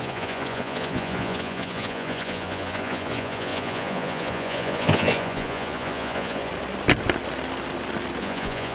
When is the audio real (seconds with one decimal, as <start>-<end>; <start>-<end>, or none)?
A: 6.5-8.2